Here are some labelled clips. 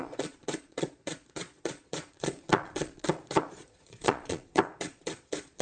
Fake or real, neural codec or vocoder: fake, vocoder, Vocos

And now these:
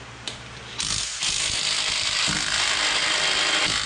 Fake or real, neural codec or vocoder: real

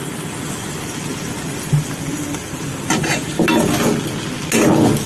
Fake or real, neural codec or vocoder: real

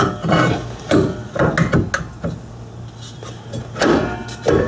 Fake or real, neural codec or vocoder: real